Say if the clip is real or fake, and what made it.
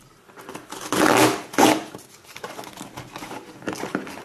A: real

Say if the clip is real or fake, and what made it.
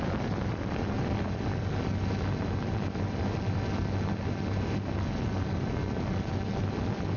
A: real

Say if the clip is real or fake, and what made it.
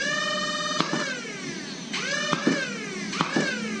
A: real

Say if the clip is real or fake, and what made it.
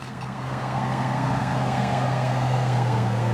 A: fake, codec, SNAC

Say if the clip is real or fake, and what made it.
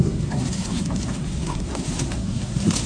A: fake, codec, SNAC